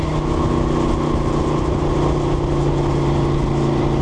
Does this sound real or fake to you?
real